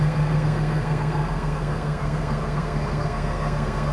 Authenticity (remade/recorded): remade